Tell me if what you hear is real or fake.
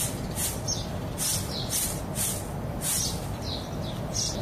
real